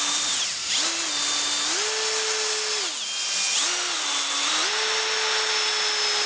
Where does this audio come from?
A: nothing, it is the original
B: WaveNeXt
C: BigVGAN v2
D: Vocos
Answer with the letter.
A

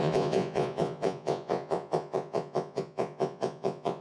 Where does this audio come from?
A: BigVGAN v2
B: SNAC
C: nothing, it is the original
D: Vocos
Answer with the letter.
D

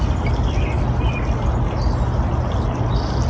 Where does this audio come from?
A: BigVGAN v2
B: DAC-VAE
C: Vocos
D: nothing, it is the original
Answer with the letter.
D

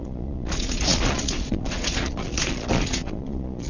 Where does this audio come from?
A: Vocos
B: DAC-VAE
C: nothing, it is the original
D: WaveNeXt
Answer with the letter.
A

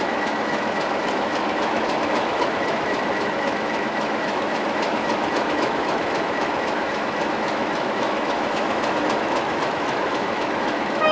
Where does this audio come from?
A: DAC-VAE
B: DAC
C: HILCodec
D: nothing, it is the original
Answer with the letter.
A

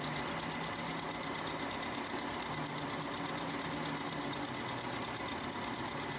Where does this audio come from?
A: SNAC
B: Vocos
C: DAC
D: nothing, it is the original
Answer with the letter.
D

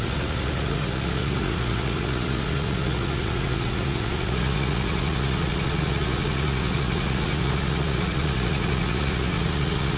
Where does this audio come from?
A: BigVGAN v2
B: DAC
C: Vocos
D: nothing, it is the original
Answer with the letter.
C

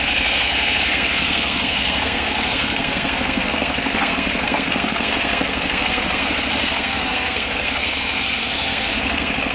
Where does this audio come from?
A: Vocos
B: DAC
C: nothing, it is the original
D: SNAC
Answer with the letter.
D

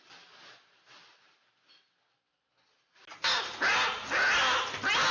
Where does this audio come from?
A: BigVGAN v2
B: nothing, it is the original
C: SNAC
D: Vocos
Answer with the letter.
B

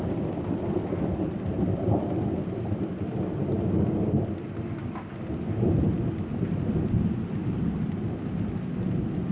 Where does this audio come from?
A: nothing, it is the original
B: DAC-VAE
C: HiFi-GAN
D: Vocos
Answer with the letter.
A